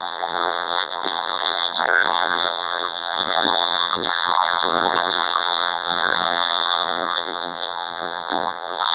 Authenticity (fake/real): fake